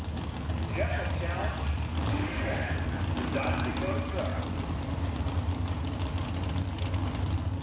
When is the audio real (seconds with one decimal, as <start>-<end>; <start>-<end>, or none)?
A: 0.0-2.1; 2.7-7.6